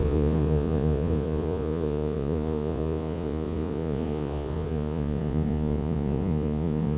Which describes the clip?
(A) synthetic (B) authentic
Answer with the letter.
A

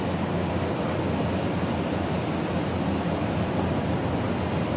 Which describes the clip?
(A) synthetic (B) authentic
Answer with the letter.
B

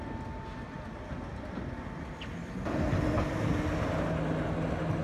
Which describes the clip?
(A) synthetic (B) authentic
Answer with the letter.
B